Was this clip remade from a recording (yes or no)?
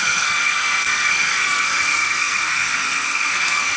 yes